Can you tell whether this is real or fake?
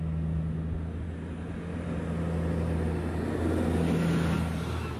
real